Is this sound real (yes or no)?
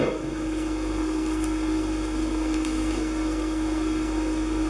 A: no